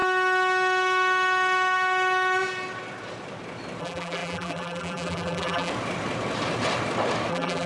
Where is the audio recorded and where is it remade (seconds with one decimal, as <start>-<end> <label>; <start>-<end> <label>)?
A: 0.0-3.8 recorded; 3.8-5.7 remade; 5.7-7.3 recorded; 7.3-7.7 remade